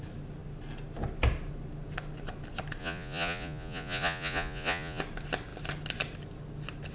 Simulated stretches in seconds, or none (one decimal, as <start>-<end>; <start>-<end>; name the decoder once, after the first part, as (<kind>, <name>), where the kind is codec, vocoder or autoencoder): 2.8-5.0 (vocoder, Vocos)